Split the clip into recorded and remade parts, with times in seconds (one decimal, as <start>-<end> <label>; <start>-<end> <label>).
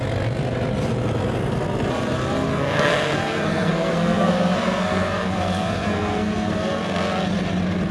0.0-2.5 recorded; 2.5-7.2 remade; 7.2-7.9 recorded